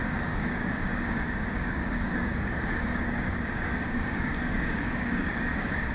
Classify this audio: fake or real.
fake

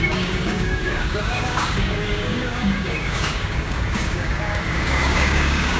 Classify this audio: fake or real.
fake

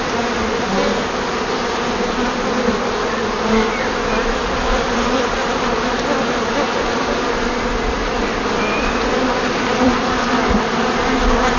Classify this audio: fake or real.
real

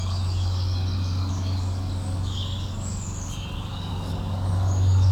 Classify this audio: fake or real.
fake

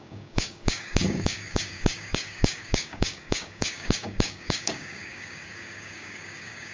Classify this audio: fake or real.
fake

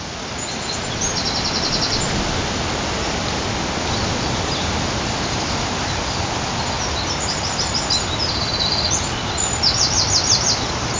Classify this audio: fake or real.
real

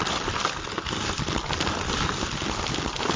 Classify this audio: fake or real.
real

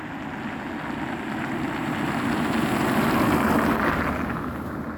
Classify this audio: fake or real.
real